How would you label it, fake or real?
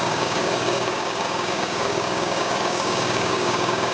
fake